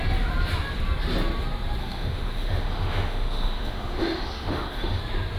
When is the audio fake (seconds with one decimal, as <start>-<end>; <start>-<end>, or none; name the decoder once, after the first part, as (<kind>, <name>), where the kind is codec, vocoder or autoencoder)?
1.8-5.0 (autoencoder, DAC-VAE)